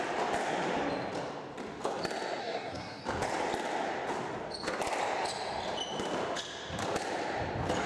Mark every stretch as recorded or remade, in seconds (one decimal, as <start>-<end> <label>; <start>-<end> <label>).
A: 0.0-2.4 recorded; 2.4-3.0 remade; 3.0-7.9 recorded

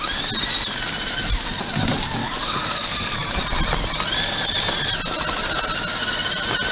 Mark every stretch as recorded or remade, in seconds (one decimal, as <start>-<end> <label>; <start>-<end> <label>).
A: 0.0-2.2 recorded; 2.2-3.4 remade; 3.4-6.7 recorded